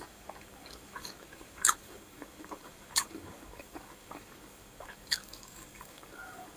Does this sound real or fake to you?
fake